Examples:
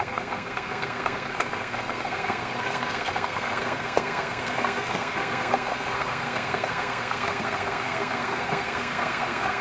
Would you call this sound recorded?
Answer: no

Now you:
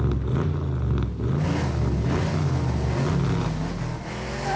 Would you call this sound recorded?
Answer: yes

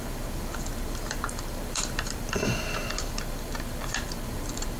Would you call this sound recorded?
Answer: no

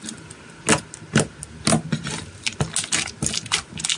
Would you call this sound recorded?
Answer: yes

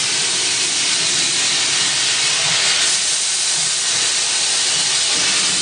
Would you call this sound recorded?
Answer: yes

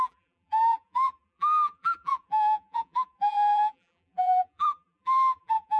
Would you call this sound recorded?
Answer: no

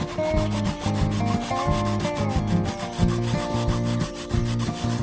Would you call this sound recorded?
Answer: yes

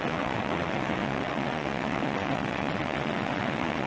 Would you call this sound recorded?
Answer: no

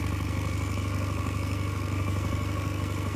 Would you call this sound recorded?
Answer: no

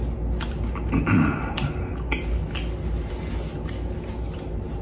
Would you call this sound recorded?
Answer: yes